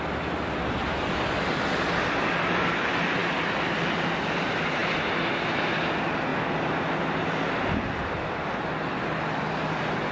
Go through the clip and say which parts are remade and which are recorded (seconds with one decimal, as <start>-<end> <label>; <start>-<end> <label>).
0.0-10.1 recorded